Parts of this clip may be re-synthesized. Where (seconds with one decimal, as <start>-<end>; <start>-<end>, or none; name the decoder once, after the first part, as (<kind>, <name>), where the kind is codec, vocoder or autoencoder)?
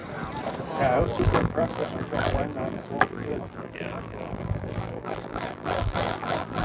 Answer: 1.0-6.6 (vocoder, BigVGAN v2)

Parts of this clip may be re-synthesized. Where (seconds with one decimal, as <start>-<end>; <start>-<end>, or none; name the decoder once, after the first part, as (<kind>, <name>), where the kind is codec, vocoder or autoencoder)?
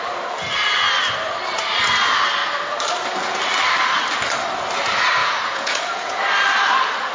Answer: 5.2-6.2 (vocoder, Vocos)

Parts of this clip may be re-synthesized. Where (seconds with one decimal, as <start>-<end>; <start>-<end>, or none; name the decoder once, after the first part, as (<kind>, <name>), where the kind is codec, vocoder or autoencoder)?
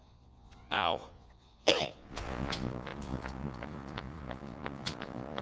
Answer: 0.0-5.4 (vocoder, Vocos)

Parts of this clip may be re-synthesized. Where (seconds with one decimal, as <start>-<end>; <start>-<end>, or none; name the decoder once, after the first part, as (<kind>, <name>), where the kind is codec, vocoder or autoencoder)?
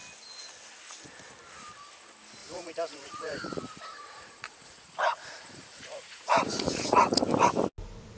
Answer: 2.4-7.2 (vocoder, Vocos)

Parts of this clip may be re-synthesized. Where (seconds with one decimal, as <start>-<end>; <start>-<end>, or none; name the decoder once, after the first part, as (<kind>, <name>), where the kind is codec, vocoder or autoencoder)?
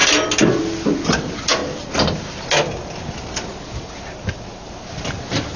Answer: none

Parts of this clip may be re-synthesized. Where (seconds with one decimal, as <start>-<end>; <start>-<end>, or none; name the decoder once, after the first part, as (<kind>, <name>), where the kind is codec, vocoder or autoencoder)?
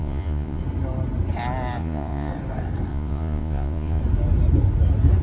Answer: 0.0-0.6 (vocoder, Vocos); 1.8-2.3; 2.9-4.0